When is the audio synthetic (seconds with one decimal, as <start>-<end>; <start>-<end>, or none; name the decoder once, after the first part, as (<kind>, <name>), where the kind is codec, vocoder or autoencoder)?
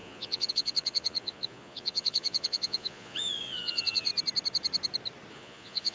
0.0-4.1 (vocoder, Vocos); 5.3-5.9